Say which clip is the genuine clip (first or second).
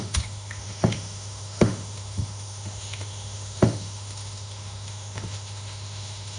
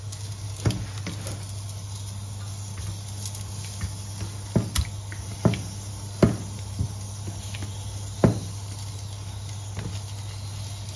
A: second